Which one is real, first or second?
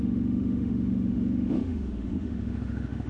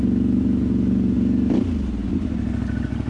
second